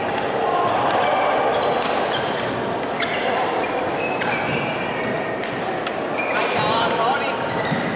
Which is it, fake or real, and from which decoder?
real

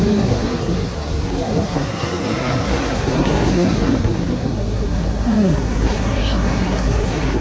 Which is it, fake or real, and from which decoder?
fake, codec, SNAC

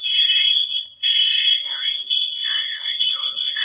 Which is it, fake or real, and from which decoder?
fake, codec, SNAC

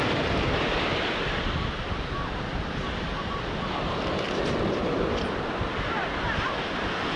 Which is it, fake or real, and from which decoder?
real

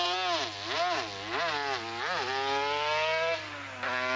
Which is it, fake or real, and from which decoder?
real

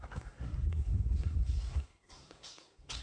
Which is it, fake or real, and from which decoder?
fake, codec, SNAC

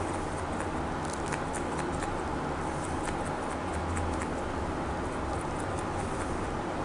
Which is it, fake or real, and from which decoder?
real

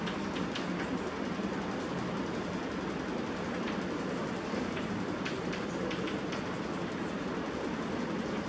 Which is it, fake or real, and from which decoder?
real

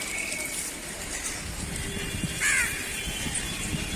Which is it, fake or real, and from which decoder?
real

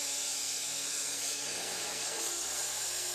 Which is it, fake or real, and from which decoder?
fake, codec, SNAC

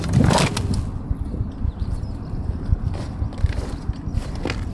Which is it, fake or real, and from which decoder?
real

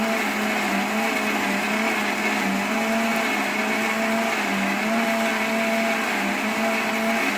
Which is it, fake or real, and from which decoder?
real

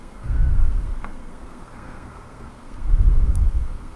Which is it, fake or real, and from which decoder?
fake, codec, SNAC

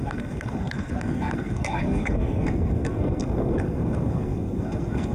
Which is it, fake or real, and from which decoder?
fake, codec, SNAC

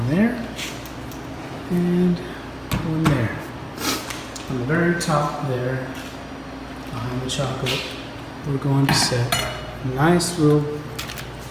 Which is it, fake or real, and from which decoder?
real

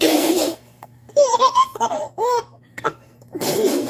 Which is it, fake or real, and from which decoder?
fake, codec, SNAC